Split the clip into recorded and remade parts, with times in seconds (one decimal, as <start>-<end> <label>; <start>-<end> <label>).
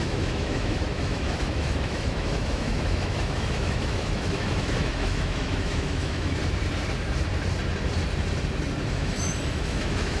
0.0-6.4 remade; 6.4-8.9 recorded; 8.9-10.2 remade